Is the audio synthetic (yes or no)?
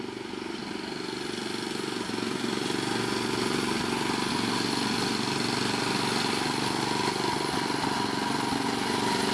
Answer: no